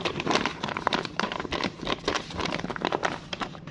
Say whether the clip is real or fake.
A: fake